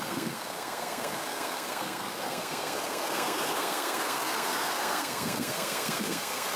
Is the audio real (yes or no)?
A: no